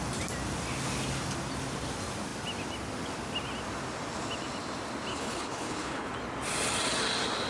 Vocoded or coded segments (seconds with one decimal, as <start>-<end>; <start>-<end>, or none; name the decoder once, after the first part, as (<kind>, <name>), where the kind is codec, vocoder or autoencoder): 5.1-6.1 (codec, HILCodec)